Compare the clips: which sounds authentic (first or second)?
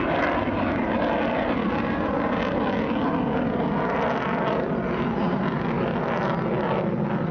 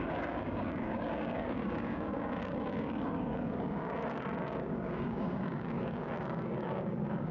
first